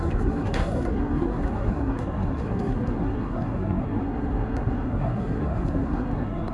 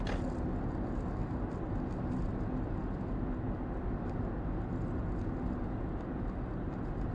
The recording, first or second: second